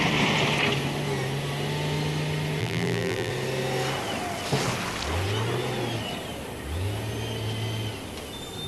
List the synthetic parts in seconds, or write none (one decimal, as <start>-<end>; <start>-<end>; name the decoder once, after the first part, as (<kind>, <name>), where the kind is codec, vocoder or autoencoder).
2.6-3.3 (vocoder, BigVGAN v2)

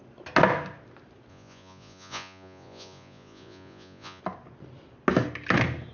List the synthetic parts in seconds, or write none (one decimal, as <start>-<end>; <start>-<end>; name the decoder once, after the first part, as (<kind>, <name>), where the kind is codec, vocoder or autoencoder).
1.3-4.2 (vocoder, Vocos)

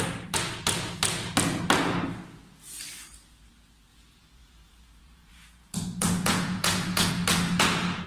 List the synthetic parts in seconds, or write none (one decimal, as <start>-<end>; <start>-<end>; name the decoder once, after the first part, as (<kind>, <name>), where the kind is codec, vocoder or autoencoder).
3.9-7.1 (vocoder, Vocos)

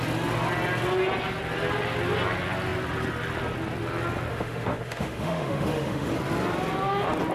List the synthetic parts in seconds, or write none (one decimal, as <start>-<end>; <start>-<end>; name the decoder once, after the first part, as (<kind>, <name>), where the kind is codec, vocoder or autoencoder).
4.3-6.1 (autoencoder, DAC-VAE)